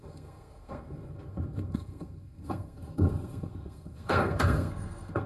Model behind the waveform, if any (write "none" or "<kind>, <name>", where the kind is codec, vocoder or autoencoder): codec, SNAC